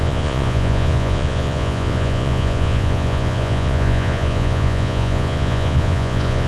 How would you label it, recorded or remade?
remade